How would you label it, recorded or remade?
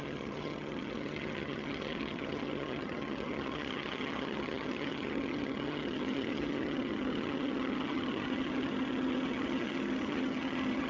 remade